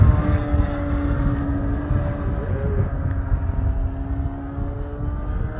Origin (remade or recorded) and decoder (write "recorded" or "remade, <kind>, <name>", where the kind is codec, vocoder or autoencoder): recorded